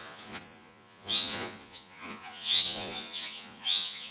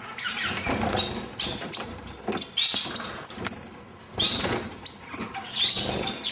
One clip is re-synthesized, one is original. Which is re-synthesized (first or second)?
first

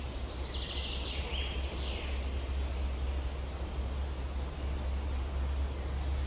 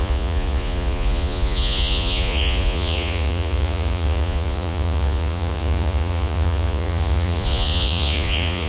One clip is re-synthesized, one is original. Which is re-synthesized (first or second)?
second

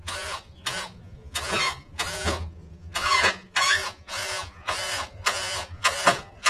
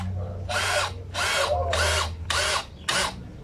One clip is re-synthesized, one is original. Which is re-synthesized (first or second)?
first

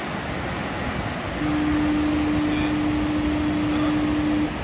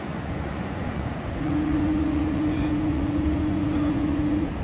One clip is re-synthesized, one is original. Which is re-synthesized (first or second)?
second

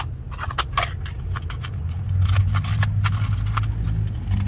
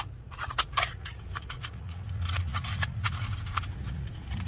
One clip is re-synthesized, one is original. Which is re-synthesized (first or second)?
second